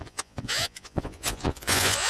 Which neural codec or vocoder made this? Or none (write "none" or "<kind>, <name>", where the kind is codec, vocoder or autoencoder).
vocoder, Vocos